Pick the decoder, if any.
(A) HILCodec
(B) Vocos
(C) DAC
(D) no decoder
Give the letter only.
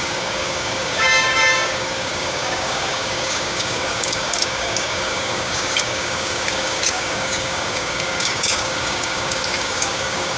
C